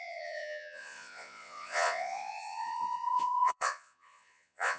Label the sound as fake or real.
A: fake